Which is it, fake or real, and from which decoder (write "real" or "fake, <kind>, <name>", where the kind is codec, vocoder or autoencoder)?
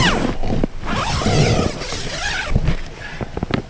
real